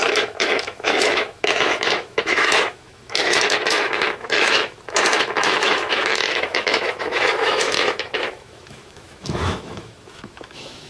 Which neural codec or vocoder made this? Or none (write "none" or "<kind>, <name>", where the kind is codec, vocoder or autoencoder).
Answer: autoencoder, DAC-VAE